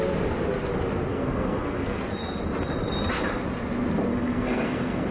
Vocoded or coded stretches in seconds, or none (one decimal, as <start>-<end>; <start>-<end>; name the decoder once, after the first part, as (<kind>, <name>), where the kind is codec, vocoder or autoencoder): 1.1-2.0 (codec, SNAC); 4.1-5.1